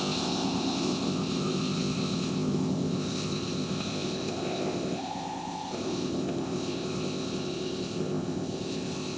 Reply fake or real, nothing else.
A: fake